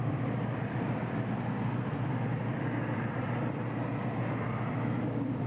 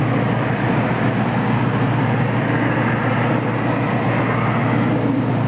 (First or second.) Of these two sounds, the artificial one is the first